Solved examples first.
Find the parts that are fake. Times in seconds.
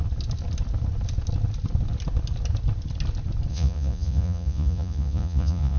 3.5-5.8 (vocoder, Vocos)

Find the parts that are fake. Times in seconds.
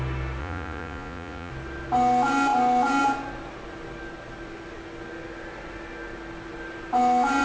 0.4-1.5 (vocoder, Vocos)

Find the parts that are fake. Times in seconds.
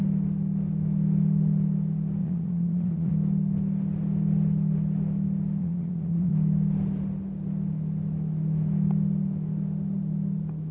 2.2-3.1 (vocoder, Vocos); 5.6-6.3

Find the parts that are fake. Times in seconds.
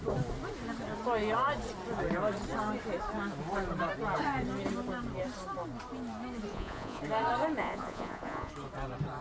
6.5-7.0 (vocoder, Vocos); 7.6-8.5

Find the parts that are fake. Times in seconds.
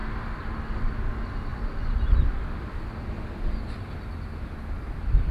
none